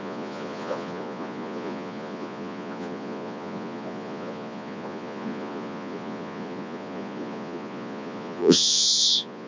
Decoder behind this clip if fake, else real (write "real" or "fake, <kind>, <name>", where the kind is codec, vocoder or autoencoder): fake, vocoder, Vocos